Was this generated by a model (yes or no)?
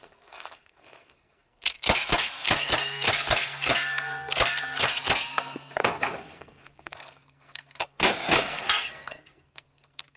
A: yes